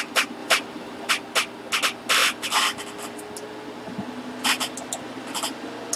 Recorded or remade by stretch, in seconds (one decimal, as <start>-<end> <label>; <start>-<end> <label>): 0.0-0.4 recorded; 0.4-1.1 remade; 1.1-6.0 recorded